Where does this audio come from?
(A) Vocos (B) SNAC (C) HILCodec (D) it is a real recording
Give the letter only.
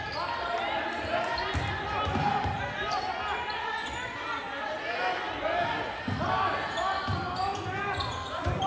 D